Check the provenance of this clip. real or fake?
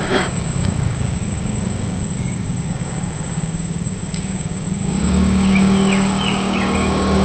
fake